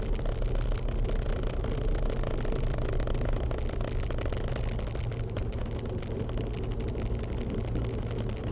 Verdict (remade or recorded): recorded